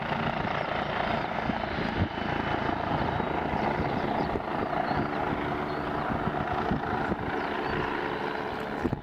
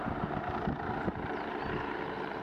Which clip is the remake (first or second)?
second